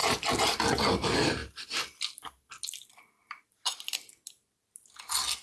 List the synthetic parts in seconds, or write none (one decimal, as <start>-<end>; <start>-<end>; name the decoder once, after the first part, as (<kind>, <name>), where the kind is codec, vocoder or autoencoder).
0.0-0.6 (vocoder, BigVGAN v2); 3.2-4.0